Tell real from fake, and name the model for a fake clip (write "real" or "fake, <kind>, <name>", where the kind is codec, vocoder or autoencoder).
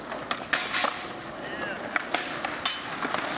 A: real